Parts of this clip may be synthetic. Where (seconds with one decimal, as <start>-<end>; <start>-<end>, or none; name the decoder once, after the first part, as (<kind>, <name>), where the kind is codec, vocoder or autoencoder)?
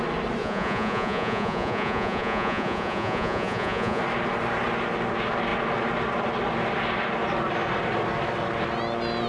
0.4-4.0 (vocoder, Vocos)